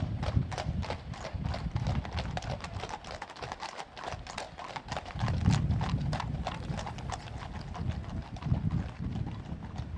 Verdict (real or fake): real